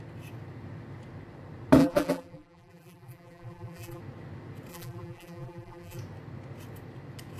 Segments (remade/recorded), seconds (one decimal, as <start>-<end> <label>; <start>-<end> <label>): 0.0-1.8 recorded; 1.8-4.0 remade; 4.0-4.7 recorded; 4.7-6.0 remade; 6.0-7.4 recorded